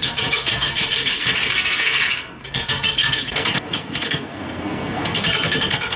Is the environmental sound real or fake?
fake